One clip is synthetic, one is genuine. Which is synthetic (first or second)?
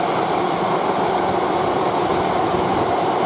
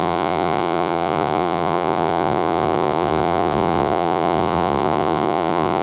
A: second